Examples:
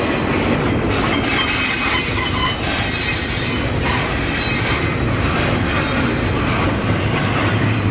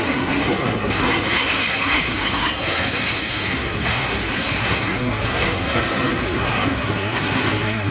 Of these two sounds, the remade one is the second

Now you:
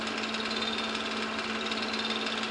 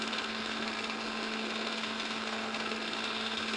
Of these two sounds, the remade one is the second